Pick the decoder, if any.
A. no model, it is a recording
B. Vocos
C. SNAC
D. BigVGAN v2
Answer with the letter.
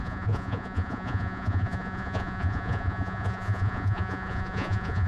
B